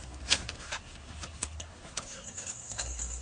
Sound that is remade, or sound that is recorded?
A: remade